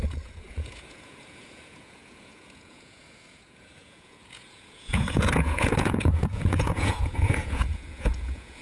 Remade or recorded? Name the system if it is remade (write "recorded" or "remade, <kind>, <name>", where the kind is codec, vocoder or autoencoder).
remade, vocoder, Vocos